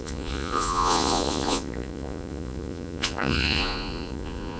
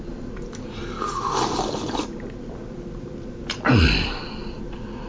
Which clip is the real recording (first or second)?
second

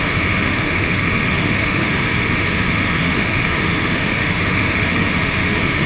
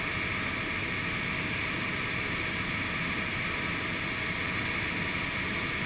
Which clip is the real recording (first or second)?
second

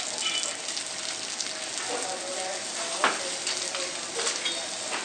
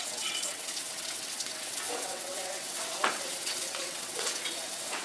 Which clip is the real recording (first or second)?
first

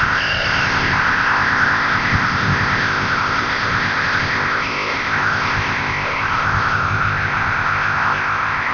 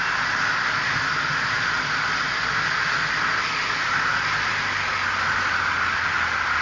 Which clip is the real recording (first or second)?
second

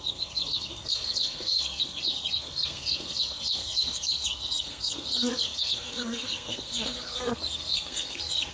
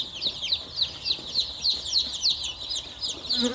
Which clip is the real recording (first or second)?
second